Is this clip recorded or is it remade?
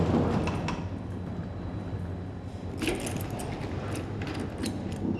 recorded